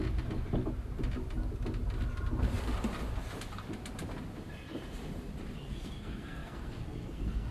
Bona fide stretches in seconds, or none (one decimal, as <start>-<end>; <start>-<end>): 0.0-5.6